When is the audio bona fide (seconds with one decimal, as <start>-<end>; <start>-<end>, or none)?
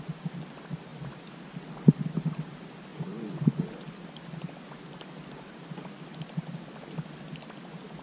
0.0-2.9; 3.7-8.0